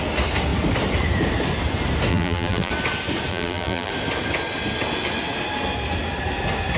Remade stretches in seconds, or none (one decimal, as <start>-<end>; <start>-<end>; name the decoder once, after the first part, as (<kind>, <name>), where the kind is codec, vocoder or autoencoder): 2.1-2.7 (vocoder, BigVGAN v2); 3.3-3.9